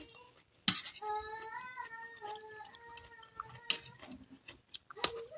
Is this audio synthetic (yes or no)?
no